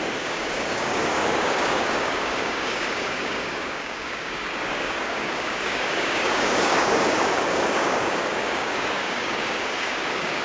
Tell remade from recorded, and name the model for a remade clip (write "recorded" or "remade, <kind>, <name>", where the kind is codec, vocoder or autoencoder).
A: remade, codec, DAC